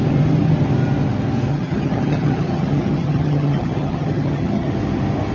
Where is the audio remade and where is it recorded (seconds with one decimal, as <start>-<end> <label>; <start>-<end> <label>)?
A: 0.0-1.5 recorded; 1.5-4.7 remade; 4.7-5.3 recorded